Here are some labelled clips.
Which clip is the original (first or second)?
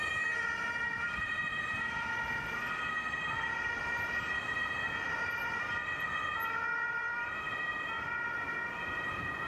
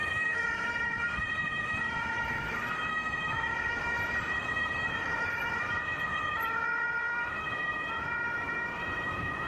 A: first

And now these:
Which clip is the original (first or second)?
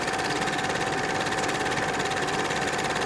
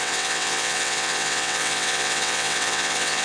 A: first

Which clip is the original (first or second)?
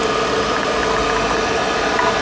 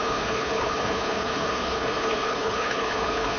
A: first